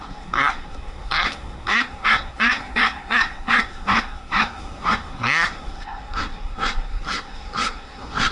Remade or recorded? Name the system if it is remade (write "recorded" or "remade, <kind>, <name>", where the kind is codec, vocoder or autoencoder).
remade, codec, SNAC